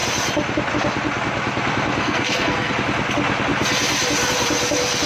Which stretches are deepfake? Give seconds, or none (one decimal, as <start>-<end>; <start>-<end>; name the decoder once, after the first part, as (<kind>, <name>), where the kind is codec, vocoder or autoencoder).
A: 2.0-2.7 (codec, SNAC)